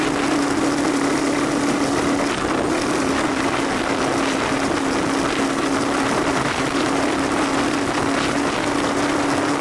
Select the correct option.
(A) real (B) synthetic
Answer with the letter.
A